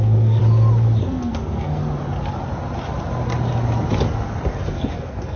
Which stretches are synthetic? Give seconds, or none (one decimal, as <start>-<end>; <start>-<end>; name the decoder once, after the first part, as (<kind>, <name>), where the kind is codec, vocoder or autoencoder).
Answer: 0.0-0.4 (codec, SNAC); 1.0-1.8; 4.7-5.4